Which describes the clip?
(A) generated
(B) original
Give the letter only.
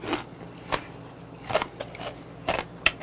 B